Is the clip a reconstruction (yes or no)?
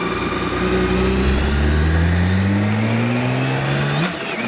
no